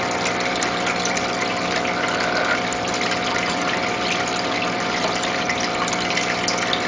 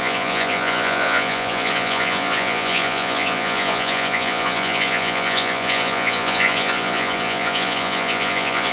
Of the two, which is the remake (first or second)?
second